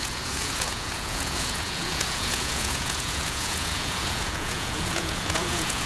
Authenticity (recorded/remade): remade